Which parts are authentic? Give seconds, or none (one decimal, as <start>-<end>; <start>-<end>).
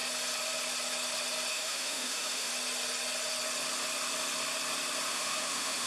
0.0-1.5; 2.5-5.1